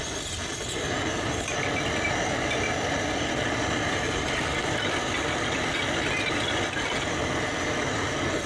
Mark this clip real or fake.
real